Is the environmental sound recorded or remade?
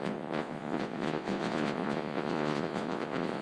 remade